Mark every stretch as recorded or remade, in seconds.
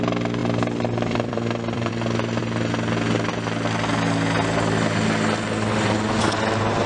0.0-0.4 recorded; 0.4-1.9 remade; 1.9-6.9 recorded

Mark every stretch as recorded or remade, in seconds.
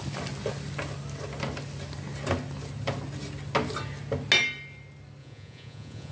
0.0-5.2 recorded; 5.2-6.1 remade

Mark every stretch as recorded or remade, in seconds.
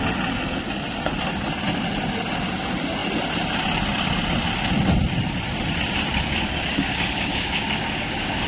0.0-6.1 recorded; 6.1-8.5 remade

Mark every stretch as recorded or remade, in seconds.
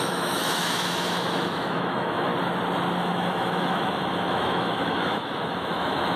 0.0-2.3 remade; 2.3-3.0 recorded; 3.0-6.2 remade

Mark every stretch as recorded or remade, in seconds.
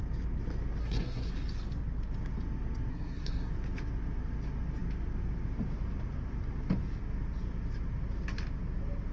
0.0-0.8 recorded; 0.8-1.3 remade; 1.3-2.9 recorded; 2.9-3.5 remade; 3.5-9.1 recorded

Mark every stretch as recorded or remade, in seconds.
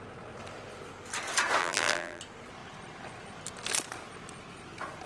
0.0-1.6 recorded; 1.6-2.2 remade; 2.2-5.1 recorded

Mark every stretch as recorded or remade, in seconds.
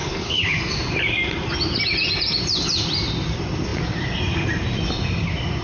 0.0-0.6 remade; 0.6-5.6 recorded